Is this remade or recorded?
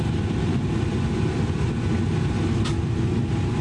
recorded